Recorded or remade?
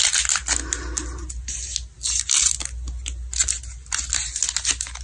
recorded